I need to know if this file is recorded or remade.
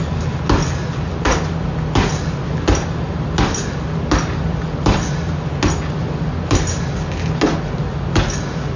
recorded